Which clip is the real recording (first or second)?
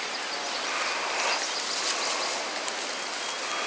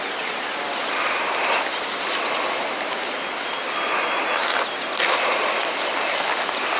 first